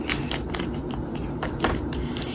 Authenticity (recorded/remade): recorded